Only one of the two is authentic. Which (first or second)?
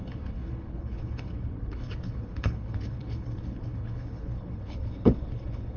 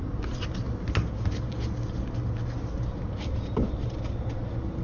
second